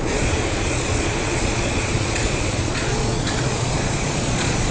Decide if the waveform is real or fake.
fake